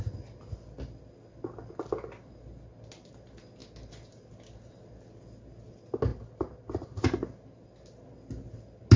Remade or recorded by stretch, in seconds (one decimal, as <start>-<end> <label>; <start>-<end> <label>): 0.0-9.0 recorded